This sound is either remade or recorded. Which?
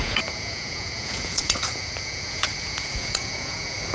remade